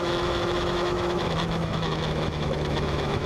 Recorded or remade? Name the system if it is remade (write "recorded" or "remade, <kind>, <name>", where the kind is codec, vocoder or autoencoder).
remade, autoencoder, DAC-VAE